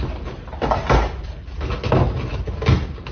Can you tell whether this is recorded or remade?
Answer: recorded